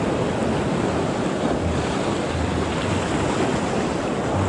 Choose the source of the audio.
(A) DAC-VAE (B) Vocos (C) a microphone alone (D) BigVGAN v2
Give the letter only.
C